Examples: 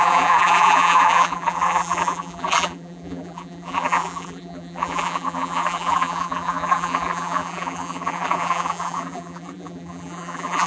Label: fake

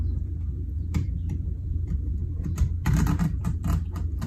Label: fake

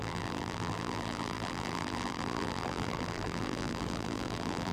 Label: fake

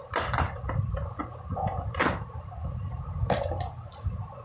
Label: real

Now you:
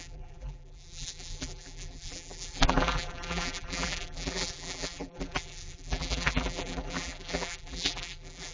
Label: fake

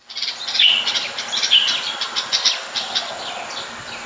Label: real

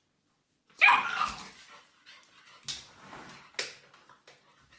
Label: real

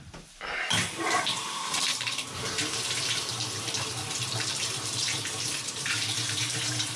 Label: fake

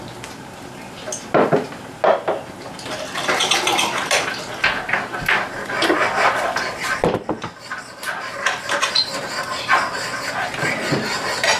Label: real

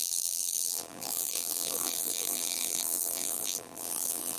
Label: fake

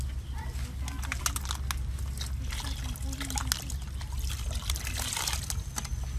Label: real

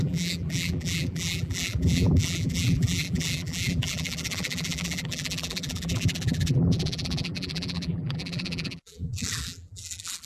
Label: fake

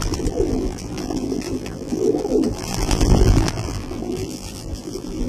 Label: fake